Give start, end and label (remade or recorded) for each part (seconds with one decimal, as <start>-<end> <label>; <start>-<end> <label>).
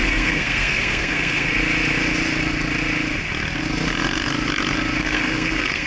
0.0-1.5 remade; 1.5-5.0 recorded; 5.0-5.9 remade